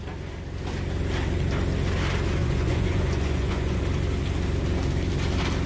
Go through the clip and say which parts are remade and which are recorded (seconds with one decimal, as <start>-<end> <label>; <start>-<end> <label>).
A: 0.0-2.4 recorded; 2.4-3.8 remade; 3.8-5.7 recorded